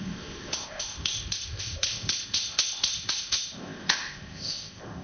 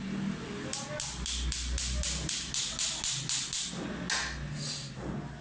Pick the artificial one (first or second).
first